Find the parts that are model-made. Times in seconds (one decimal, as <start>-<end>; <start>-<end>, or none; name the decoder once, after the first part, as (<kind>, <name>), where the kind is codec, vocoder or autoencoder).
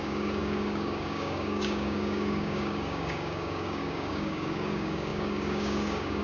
0.0-6.2 (codec, DAC)